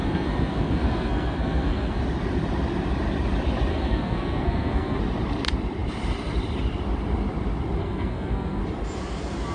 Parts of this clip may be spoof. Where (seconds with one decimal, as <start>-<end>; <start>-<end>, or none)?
0.0-2.0; 3.7-5.0; 7.8-8.6